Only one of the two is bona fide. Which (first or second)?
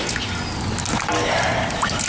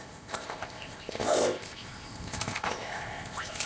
first